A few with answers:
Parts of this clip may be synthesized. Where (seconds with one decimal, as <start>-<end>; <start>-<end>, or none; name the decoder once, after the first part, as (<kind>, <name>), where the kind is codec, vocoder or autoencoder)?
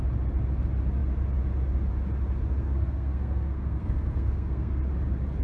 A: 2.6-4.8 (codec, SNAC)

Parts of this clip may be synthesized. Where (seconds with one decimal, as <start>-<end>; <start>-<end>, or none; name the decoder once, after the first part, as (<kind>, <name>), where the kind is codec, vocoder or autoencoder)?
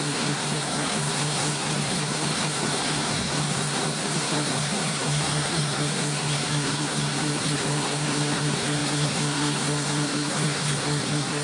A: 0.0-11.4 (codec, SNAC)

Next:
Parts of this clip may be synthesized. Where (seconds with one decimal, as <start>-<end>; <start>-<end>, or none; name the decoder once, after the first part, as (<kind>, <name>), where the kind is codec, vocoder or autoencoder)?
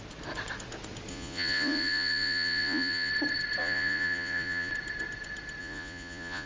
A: 1.1-3.1 (vocoder, Vocos); 3.6-4.7; 5.6-6.5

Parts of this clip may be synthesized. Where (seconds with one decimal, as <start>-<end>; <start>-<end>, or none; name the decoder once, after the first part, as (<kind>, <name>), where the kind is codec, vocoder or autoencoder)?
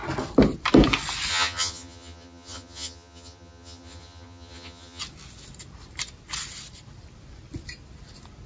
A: 1.3-5.0 (vocoder, HiFi-GAN)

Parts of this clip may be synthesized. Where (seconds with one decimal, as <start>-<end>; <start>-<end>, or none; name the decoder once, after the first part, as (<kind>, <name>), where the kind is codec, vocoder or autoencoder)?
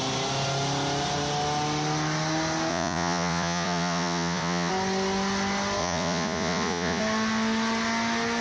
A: 2.7-4.7 (vocoder, Vocos); 5.8-7.0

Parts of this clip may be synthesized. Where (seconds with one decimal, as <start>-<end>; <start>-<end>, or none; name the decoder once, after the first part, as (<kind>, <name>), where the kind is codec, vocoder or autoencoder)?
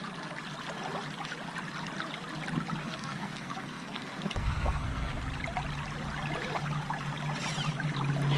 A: 2.8-5.2 (codec, SNAC)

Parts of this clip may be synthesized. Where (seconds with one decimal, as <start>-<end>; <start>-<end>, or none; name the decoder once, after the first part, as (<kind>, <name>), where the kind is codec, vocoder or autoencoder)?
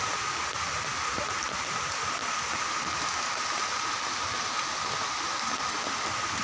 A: none